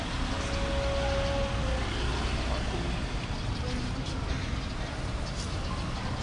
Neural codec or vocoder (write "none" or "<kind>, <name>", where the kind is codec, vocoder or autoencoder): none